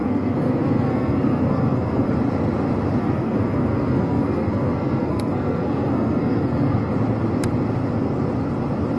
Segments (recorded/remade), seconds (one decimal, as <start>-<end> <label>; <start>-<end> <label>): 0.0-2.1 remade; 2.1-3.0 recorded; 3.0-6.9 remade; 6.9-9.0 recorded